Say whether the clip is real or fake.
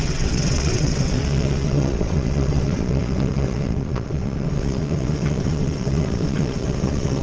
fake